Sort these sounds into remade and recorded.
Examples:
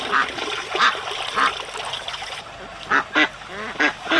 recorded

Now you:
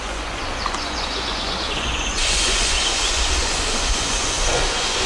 remade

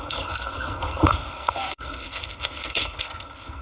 remade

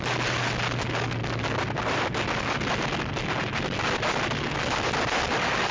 recorded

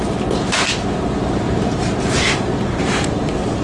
remade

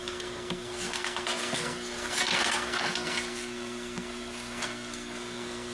remade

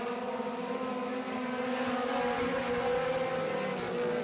recorded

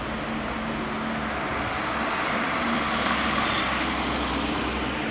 recorded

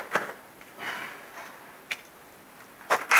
recorded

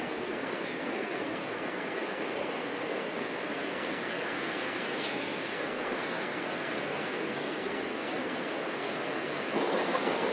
remade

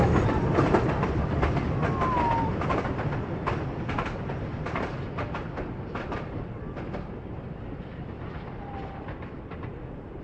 recorded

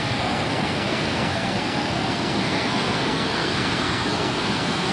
remade